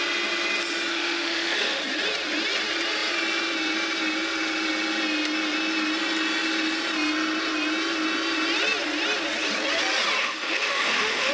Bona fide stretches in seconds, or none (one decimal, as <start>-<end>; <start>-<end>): 0.0-0.9; 1.8-10.2